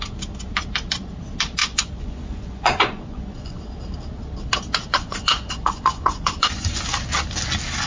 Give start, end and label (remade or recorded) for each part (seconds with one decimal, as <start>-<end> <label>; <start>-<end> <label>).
0.0-1.6 recorded; 1.6-3.6 remade; 3.6-4.9 recorded; 4.9-6.8 remade; 6.8-7.9 recorded